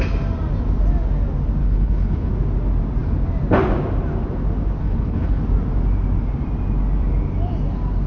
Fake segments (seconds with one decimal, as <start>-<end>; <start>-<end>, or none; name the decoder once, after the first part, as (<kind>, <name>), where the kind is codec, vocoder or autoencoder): 1.6-2.3 (codec, HILCodec); 4.8-5.4